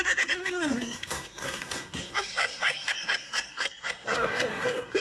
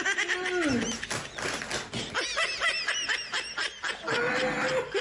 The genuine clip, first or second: second